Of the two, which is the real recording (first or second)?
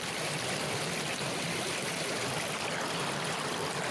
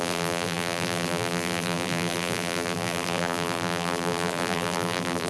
first